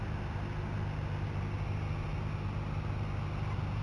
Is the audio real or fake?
real